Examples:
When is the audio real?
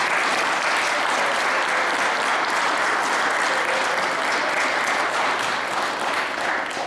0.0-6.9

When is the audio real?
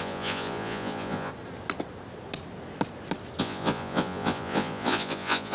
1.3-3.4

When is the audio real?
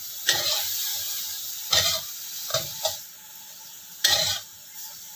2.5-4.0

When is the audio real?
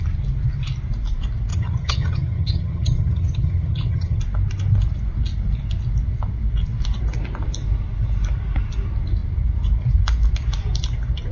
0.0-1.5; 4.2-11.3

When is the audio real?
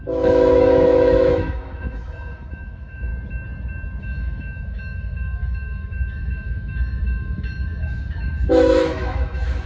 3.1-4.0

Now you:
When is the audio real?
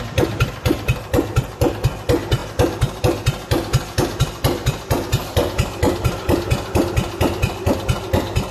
0.0-8.5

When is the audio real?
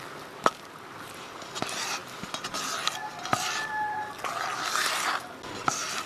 0.0-6.1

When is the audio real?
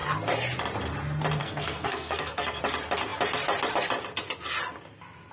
0.0-1.4; 2.6-5.3